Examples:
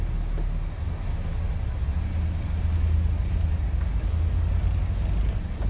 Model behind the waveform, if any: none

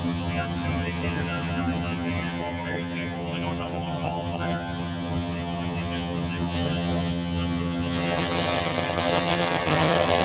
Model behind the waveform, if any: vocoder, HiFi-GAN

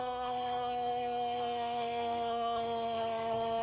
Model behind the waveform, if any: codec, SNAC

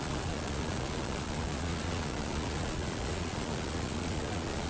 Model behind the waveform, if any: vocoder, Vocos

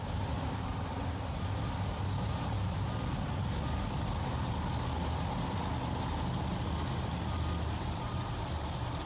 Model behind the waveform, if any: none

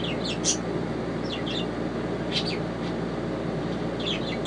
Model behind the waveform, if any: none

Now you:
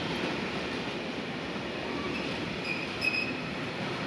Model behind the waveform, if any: none